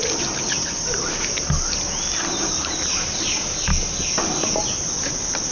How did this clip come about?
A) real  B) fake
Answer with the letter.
A